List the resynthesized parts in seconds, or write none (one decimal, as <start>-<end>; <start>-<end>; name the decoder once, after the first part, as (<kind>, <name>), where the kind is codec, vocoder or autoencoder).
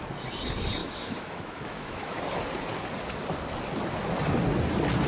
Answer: 0.8-2.2 (autoencoder, DAC-VAE)